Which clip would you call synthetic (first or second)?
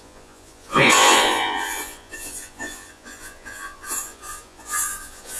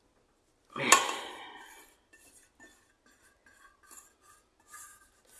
first